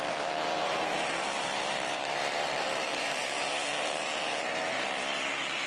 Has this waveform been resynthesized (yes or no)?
yes